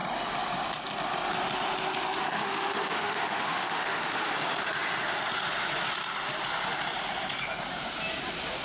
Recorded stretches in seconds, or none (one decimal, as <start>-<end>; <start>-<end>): 0.0-2.2; 4.3-8.6